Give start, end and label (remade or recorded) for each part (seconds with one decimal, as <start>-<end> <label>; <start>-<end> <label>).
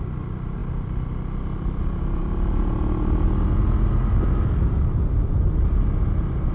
0.0-6.5 recorded